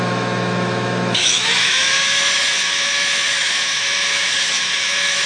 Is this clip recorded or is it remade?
remade